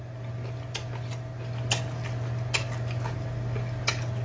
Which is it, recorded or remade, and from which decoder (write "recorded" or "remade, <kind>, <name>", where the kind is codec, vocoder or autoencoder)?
recorded